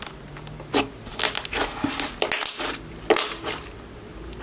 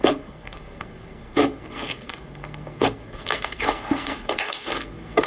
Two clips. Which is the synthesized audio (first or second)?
second